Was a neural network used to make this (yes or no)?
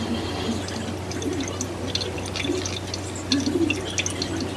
no